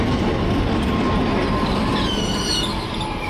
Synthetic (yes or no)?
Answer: no